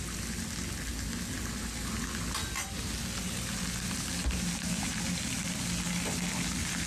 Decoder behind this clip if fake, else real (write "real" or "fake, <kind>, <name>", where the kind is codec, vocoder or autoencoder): real